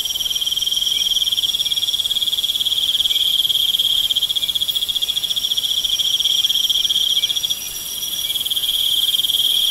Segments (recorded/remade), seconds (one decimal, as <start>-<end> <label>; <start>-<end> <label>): 0.0-8.6 recorded; 8.6-9.7 remade